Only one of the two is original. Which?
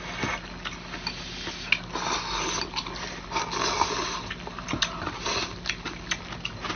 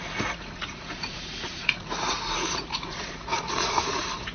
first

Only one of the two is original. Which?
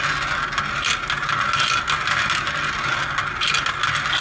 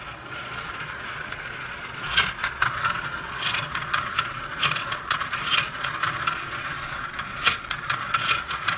first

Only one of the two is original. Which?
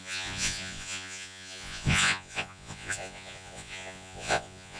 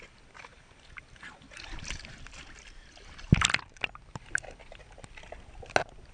second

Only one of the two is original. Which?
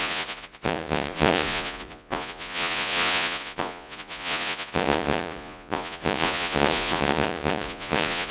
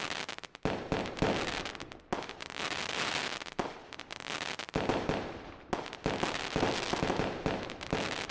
second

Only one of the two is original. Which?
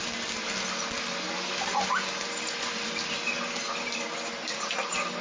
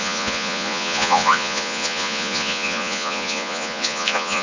first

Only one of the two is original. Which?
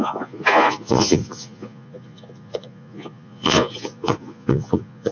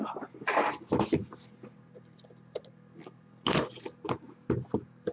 second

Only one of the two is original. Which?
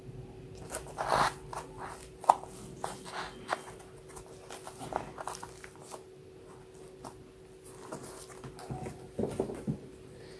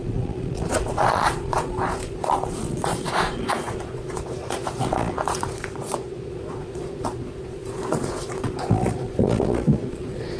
first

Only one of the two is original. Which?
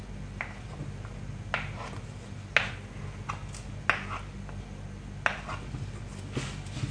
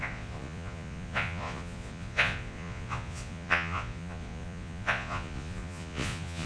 first